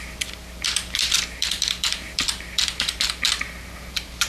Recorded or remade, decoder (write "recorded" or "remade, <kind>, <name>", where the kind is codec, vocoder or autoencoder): remade, vocoder, BigVGAN v2